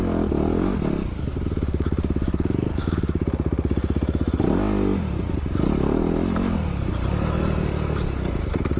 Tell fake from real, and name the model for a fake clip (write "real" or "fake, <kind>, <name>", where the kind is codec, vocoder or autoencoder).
real